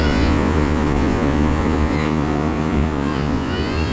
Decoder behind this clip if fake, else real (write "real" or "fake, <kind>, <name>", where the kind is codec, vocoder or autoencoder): fake, vocoder, Vocos